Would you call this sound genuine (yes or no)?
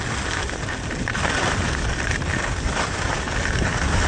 yes